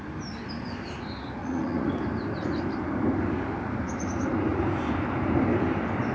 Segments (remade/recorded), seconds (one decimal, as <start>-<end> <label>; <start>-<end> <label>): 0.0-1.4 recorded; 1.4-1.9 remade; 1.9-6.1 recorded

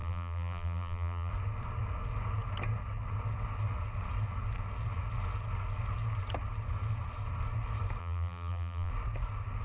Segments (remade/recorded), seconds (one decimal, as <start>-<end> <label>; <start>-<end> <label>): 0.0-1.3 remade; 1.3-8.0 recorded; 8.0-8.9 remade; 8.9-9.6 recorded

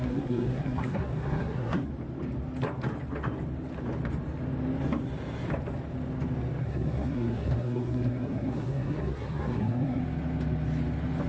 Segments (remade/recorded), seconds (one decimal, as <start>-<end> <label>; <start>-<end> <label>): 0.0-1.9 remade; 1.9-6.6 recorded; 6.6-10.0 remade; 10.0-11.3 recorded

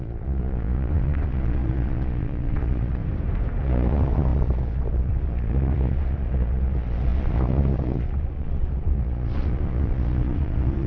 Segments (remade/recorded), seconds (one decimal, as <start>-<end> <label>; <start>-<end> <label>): 0.0-3.0 remade; 3.0-3.6 recorded; 3.6-10.9 remade

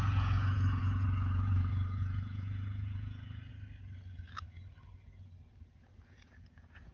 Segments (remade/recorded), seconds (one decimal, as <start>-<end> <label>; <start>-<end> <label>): 0.0-3.5 remade; 3.5-6.1 recorded; 6.1-6.9 remade

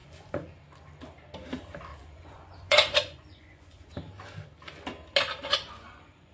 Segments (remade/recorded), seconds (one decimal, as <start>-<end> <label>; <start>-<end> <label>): 0.0-0.6 remade; 0.6-1.9 recorded; 1.9-3.9 remade; 3.9-5.4 recorded; 5.4-6.3 remade